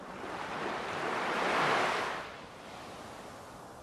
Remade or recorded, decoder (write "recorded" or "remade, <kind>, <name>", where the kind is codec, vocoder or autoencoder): recorded